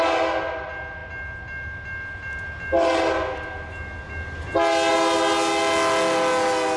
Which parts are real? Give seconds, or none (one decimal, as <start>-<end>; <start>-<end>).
0.0-6.8